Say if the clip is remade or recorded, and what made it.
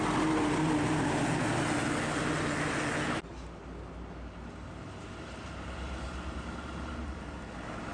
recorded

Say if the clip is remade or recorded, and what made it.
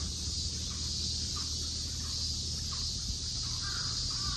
recorded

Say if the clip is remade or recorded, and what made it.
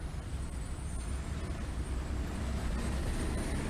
recorded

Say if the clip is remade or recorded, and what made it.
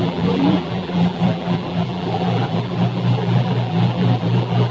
remade, vocoder, BigVGAN v2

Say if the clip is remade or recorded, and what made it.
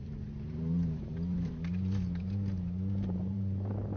remade, vocoder, BigVGAN v2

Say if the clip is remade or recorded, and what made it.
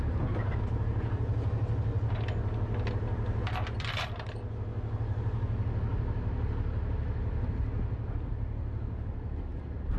recorded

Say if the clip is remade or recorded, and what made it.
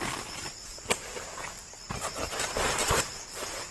recorded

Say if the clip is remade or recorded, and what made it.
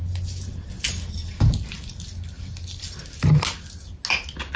recorded